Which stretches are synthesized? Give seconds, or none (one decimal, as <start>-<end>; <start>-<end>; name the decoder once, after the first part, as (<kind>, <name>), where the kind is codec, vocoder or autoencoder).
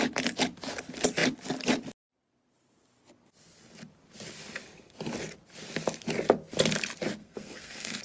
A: 7.2-8.0 (codec, SNAC)